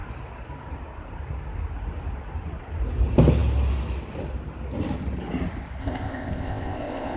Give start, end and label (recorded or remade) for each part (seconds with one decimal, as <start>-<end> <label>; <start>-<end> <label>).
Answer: 0.0-5.8 recorded; 5.8-7.2 remade